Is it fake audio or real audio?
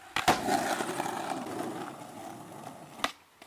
real